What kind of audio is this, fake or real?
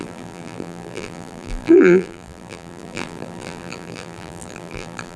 fake